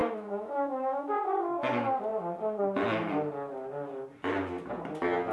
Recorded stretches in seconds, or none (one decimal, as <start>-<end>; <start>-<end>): 1.2-5.3

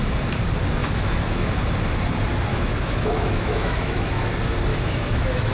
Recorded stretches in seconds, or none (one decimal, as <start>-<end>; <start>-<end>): 0.0-0.8; 1.5-2.5; 4.3-4.7

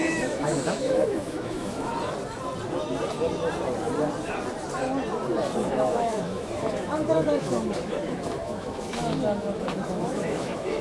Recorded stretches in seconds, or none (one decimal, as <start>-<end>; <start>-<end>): 1.9-5.6

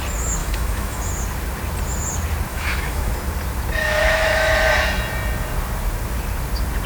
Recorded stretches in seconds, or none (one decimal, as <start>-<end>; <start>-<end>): 0.0-0.4; 1.1-2.5; 3.1-3.8; 4.5-6.9

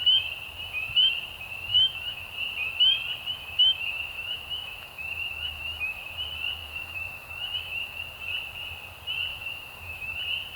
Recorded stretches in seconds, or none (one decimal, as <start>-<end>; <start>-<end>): 0.0-1.7; 2.3-3.3; 6.0-6.6; 8.0-9.3; 10.2-10.6

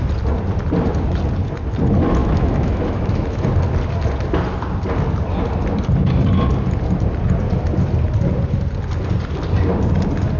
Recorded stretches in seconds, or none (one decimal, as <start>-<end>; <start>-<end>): 0.0-2.2; 3.4-10.4

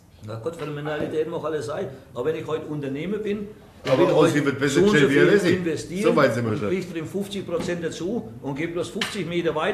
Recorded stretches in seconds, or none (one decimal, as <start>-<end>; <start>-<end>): 0.0-6.5; 7.0-9.7

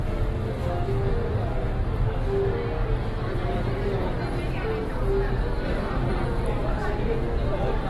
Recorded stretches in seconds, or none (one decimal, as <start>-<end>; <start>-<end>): 0.0-7.9